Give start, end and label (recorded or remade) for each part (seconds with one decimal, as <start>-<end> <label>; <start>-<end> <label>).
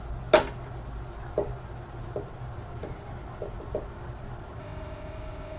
0.0-4.6 recorded; 4.6-5.6 remade